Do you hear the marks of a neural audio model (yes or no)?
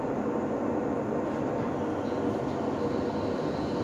no